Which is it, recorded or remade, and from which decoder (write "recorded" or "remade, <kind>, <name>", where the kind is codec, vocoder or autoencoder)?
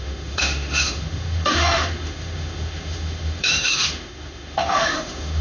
remade, autoencoder, DAC-VAE